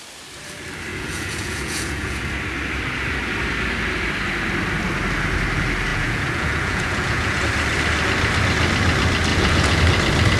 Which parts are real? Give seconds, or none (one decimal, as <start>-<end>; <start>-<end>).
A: 0.0-0.9; 2.2-5.9; 7.4-9.3; 9.8-10.4